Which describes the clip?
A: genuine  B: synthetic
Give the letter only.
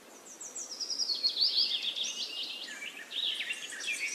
A